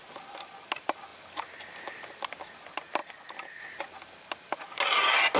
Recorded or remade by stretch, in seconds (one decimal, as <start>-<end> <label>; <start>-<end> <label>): 0.0-5.4 recorded